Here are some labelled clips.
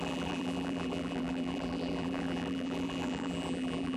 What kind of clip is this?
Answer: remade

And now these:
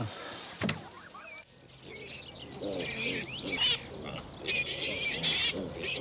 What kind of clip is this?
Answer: recorded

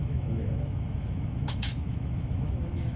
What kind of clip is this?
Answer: remade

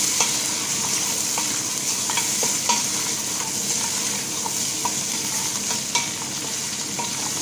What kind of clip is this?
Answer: recorded